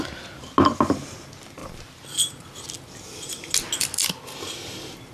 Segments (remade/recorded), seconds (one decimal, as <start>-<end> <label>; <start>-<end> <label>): 0.0-5.1 recorded